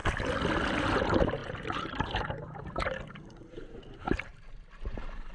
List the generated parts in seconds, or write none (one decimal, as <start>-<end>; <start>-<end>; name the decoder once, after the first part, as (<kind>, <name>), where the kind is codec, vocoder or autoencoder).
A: 0.8-4.3 (vocoder, BigVGAN v2)